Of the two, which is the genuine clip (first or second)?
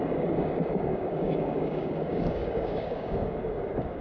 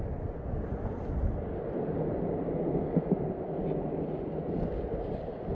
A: second